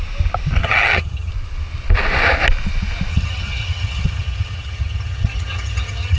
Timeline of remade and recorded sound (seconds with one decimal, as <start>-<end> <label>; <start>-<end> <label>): 0.0-0.6 recorded; 0.6-1.3 remade; 1.3-3.1 recorded; 3.1-6.2 remade